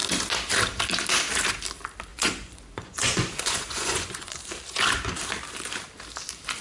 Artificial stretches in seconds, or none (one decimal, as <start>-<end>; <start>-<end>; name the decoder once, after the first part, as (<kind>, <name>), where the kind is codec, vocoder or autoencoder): 2.1-4.4 (vocoder, Vocos)